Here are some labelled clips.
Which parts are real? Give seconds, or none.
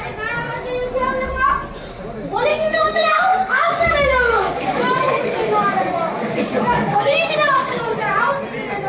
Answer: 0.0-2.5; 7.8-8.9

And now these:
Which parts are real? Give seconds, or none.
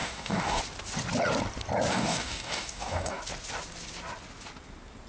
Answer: 0.6-1.9; 3.2-5.1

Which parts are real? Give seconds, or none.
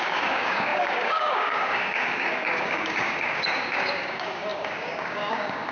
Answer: none